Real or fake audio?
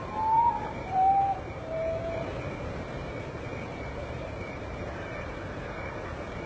fake